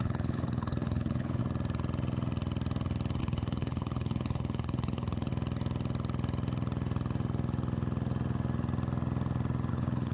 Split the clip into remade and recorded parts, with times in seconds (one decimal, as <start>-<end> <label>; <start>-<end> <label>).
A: 0.0-1.4 remade; 1.4-3.2 recorded; 3.2-5.3 remade; 5.3-9.7 recorded; 9.7-10.1 remade